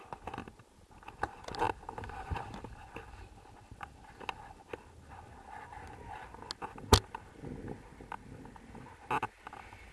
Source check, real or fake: real